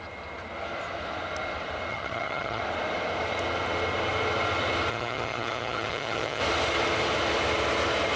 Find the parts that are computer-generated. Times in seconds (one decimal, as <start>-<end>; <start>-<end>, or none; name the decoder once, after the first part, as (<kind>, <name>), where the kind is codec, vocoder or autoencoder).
1.9-2.6 (vocoder, HiFi-GAN); 4.9-6.4